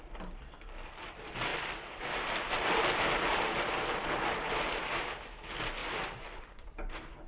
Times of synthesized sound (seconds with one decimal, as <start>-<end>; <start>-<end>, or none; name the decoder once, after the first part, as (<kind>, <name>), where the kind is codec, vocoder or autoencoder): 1.5-4.2 (vocoder, BigVGAN v2); 5.8-7.3